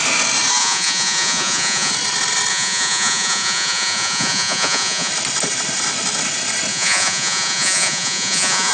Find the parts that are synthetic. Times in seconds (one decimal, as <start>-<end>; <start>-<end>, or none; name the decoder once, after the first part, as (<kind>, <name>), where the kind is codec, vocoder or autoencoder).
0.6-1.9 (vocoder, Vocos); 2.5-5.1; 6.7-8.7